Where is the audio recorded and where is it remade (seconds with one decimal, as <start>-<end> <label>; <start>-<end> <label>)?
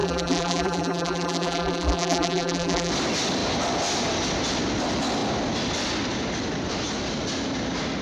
0.0-2.9 remade; 2.9-8.0 recorded